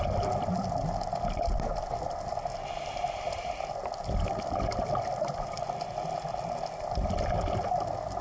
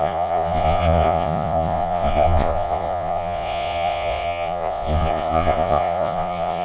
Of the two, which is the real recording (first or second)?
first